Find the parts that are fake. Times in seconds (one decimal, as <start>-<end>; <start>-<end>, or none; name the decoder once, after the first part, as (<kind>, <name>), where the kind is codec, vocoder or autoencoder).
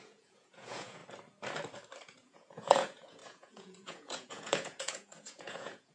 0.0-1.0 (vocoder, Vocos); 2.0-5.9